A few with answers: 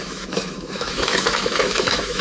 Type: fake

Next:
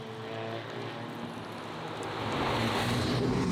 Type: real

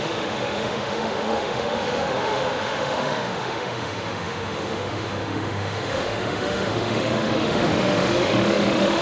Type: fake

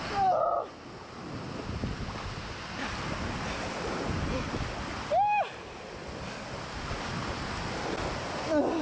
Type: real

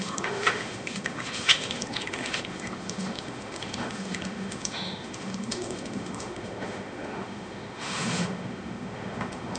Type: fake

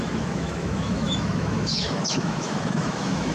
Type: fake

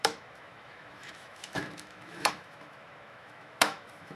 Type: fake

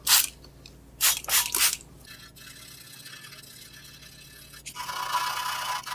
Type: real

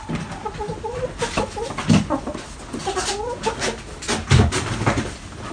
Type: real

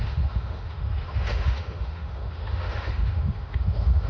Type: fake